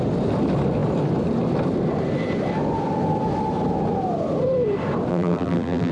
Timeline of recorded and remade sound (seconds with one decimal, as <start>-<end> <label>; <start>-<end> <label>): 0.0-5.1 recorded; 5.1-5.9 remade